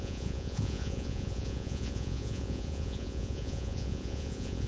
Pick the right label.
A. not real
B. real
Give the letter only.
A